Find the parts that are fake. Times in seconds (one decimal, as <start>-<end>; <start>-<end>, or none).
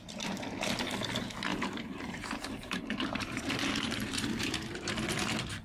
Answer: 1.5-4.9